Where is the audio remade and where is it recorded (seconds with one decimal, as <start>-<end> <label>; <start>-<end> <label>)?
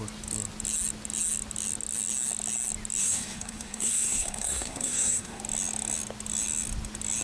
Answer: 0.0-3.0 recorded; 3.0-5.4 remade; 5.4-7.2 recorded